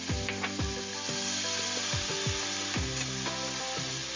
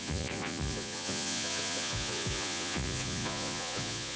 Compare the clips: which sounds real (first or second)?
first